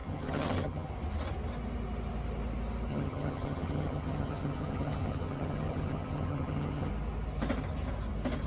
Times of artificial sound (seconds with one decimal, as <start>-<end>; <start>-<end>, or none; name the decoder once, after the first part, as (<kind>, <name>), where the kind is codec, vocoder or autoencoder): 0.0-0.9 (vocoder, HiFi-GAN); 2.9-6.9